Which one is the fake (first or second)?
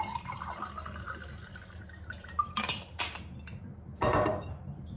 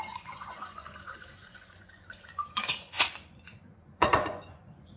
second